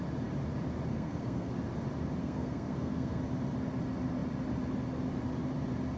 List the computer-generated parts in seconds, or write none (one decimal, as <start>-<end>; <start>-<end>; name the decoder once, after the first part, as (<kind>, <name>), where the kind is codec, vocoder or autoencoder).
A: 0.9-1.5 (codec, SNAC); 2.2-3.2